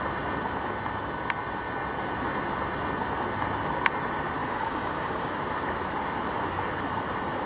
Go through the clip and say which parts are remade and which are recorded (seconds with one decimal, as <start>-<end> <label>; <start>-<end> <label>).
0.0-4.4 recorded; 4.4-5.4 remade; 5.4-7.5 recorded